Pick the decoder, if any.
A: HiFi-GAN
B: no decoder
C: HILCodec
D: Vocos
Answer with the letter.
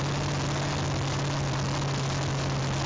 B